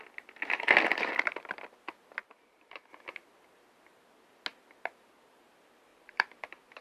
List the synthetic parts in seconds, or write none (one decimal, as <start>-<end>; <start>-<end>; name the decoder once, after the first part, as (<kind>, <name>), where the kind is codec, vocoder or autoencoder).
2.2-2.9 (vocoder, BigVGAN v2); 5.9-6.8